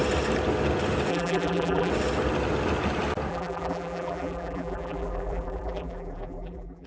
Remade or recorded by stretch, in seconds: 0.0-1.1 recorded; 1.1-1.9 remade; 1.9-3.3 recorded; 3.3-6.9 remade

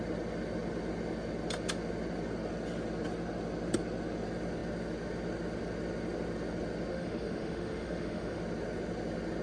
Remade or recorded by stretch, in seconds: 0.0-6.9 recorded; 6.9-8.4 remade; 8.4-9.4 recorded

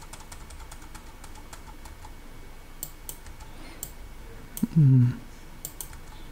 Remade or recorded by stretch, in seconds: 0.0-6.3 recorded

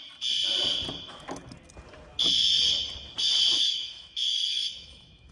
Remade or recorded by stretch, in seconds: 0.0-3.6 recorded; 3.6-5.3 remade

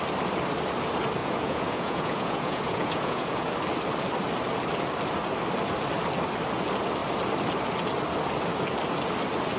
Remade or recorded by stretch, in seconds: 0.0-1.2 recorded; 1.2-3.5 remade; 3.5-9.6 recorded

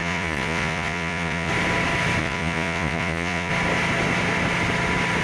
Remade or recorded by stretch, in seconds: 0.0-1.5 remade; 1.5-2.2 recorded; 2.2-3.5 remade; 3.5-5.2 recorded